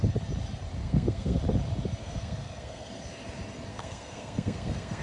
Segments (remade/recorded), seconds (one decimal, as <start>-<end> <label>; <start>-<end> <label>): 0.0-0.8 recorded; 0.8-1.4 remade; 1.4-2.0 recorded; 2.0-2.9 remade; 2.9-3.7 recorded; 3.7-5.0 remade